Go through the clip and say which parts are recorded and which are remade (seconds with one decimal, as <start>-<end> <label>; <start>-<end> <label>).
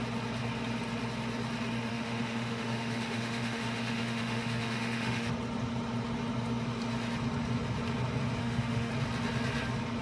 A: 0.0-1.9 recorded; 1.9-5.3 remade; 5.3-8.4 recorded; 8.4-8.9 remade; 8.9-10.0 recorded